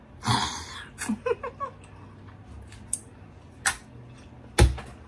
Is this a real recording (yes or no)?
yes